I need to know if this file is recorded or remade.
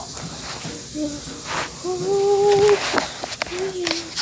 recorded